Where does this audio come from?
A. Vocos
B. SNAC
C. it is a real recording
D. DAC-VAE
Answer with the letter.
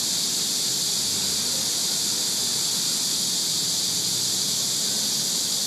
C